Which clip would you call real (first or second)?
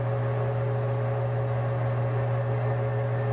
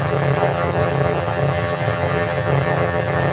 first